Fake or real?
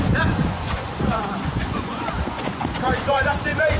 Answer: fake